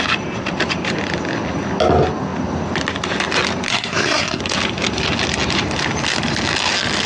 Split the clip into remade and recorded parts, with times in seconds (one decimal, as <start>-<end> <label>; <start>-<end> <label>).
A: 0.0-3.7 recorded; 3.7-4.4 remade; 4.4-7.1 recorded

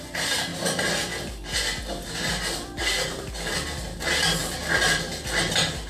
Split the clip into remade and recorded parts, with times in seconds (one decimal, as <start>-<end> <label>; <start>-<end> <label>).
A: 0.0-5.9 recorded

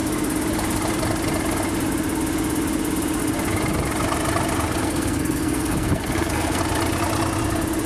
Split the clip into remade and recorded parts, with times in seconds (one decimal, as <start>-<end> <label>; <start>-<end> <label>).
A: 0.0-4.8 recorded; 4.8-6.6 remade; 6.6-7.9 recorded

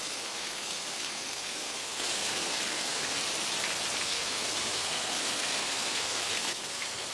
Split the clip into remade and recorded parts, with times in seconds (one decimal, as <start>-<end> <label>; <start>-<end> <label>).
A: 0.0-3.2 remade; 3.2-4.0 recorded; 4.0-7.1 remade